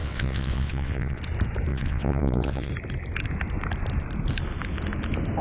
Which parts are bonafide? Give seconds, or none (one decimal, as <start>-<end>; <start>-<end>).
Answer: 1.2-1.7; 2.7-5.4